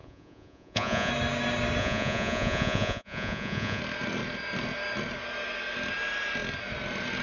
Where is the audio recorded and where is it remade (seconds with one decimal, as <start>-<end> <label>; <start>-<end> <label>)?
0.0-1.1 remade; 1.1-1.8 recorded; 1.8-3.8 remade; 3.8-7.2 recorded